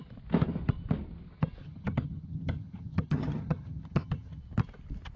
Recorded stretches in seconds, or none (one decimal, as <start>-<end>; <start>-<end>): 0.0-1.6; 4.4-5.2